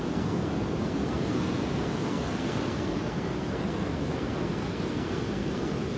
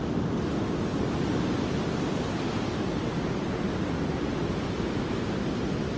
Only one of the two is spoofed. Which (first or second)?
first